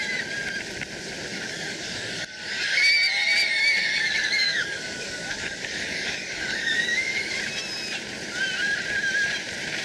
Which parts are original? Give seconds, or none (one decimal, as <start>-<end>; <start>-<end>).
0.0-1.3; 2.9-3.6; 7.3-9.8